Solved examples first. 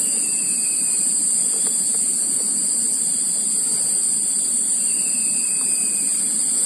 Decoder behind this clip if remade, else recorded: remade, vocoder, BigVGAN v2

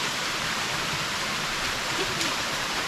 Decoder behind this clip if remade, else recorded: remade, vocoder, BigVGAN v2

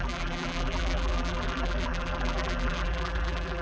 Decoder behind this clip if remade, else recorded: remade, vocoder, BigVGAN v2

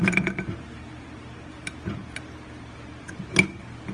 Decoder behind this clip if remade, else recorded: remade, vocoder, BigVGAN v2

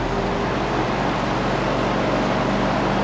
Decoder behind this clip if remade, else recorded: remade, vocoder, BigVGAN v2